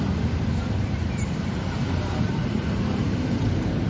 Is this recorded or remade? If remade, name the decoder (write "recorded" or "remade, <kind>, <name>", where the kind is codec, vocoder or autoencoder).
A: remade, vocoder, BigVGAN v2